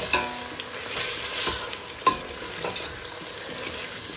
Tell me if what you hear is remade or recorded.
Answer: recorded